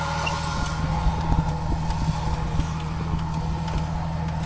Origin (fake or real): real